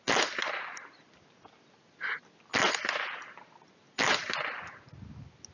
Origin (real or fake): real